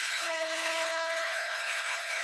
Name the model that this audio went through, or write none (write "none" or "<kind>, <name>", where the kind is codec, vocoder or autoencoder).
codec, HILCodec